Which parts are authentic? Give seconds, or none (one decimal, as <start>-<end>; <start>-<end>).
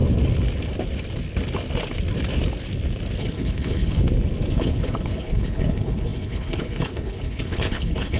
0.0-3.2; 4.0-4.5